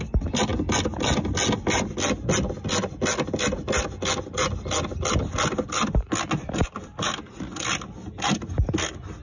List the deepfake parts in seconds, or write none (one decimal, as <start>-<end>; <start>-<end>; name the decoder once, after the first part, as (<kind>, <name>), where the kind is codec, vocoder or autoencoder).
none